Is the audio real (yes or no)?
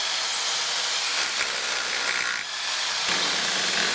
yes